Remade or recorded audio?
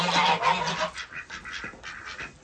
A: recorded